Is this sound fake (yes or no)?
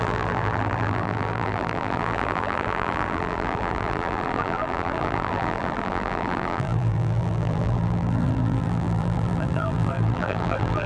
yes